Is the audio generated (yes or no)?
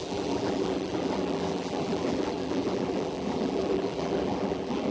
yes